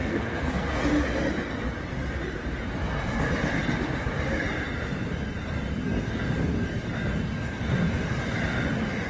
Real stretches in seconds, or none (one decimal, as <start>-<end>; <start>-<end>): 0.8-9.1